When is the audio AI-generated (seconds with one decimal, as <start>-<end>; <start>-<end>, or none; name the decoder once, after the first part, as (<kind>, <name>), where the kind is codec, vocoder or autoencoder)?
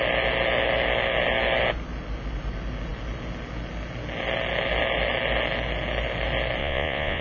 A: 6.6-7.2 (vocoder, Vocos)